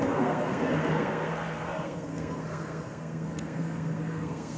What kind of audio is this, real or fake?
fake